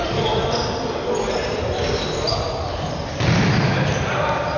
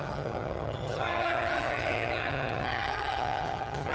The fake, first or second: second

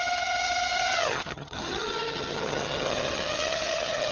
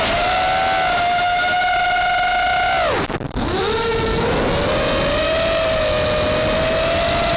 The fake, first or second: first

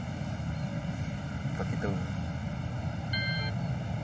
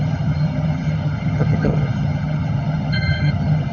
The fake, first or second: second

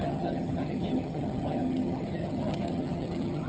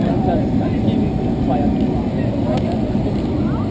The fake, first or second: first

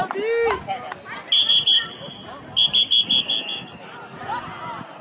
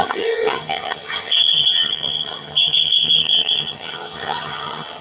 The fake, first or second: second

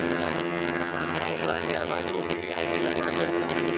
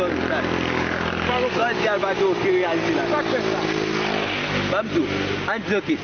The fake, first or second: first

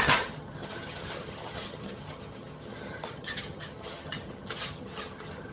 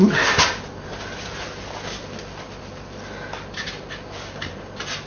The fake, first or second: first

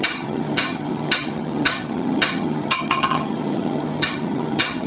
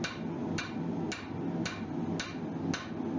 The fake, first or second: first